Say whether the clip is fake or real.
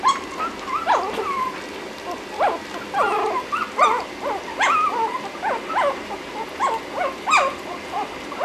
real